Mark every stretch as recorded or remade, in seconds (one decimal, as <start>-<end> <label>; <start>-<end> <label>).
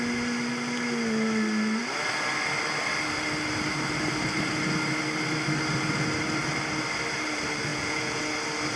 0.0-7.7 recorded; 7.7-8.2 remade; 8.2-8.8 recorded